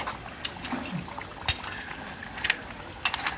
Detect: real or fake real